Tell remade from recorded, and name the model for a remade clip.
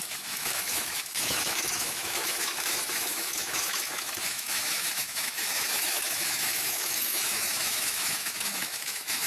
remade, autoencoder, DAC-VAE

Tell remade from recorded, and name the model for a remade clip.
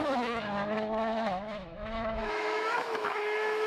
remade, autoencoder, DAC-VAE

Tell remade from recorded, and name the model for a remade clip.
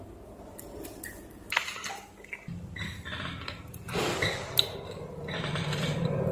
recorded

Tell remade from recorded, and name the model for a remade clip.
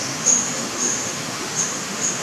remade, autoencoder, DAC-VAE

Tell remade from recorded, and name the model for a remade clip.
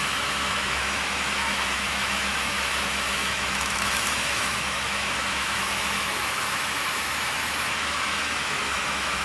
remade, autoencoder, DAC-VAE